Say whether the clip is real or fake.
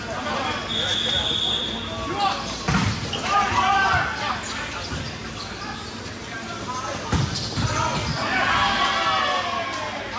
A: real